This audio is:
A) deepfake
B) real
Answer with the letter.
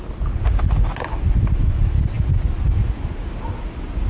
B